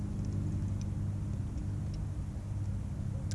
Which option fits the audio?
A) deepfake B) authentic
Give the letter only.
B